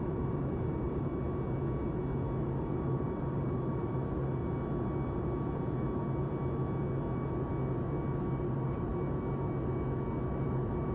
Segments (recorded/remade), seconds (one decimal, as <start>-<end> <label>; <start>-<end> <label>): 0.0-1.1 remade; 1.1-2.4 recorded; 2.4-4.4 remade; 4.4-8.4 recorded; 8.4-8.9 remade; 8.9-10.3 recorded; 10.3-10.9 remade